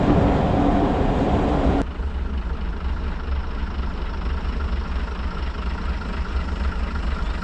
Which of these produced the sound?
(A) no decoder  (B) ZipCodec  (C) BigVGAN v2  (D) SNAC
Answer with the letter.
A